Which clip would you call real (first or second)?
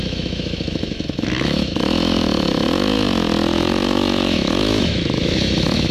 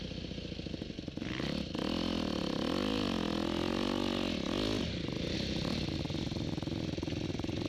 second